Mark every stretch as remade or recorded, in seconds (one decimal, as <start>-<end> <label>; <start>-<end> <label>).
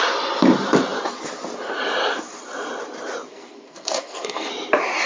0.0-3.3 recorded; 3.3-4.5 remade; 4.5-5.1 recorded